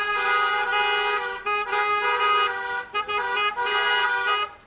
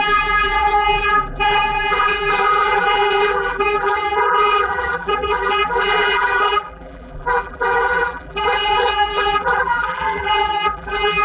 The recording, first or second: first